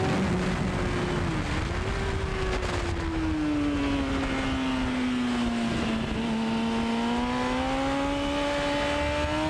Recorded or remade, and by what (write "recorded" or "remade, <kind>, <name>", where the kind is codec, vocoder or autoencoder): recorded